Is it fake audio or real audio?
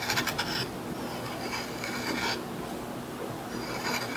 real